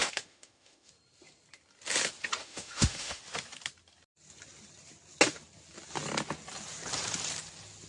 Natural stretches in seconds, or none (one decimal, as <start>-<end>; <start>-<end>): 0.9-2.4; 3.2-7.9